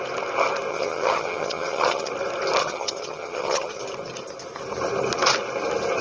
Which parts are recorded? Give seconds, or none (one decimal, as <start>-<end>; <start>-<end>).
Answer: 0.0-0.7; 2.1-2.6; 3.8-6.0